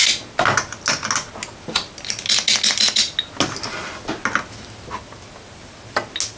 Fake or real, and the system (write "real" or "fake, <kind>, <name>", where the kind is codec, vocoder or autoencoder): real